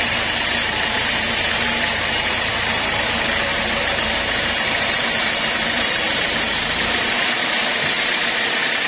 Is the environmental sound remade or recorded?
remade